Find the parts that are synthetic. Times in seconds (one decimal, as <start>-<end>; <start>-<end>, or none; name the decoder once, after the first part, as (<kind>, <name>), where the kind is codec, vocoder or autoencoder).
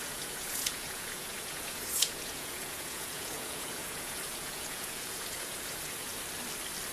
0.0-6.1 (vocoder, Vocos)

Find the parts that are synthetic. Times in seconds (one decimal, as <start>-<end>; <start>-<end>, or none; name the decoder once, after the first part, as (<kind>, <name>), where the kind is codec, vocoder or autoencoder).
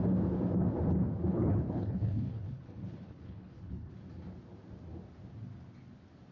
1.3-3.9 (codec, HILCodec)